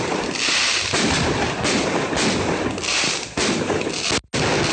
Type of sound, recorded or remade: recorded